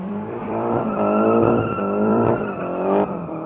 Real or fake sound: fake